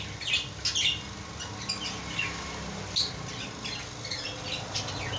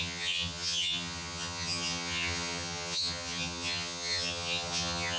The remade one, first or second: second